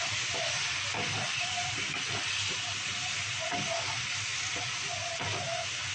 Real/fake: real